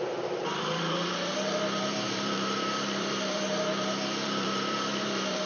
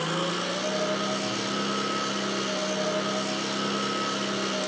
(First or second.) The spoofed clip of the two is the first